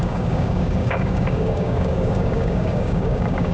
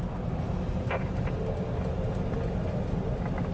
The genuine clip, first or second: second